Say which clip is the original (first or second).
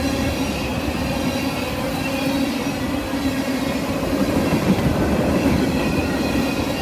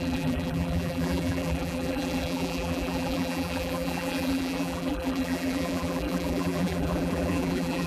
first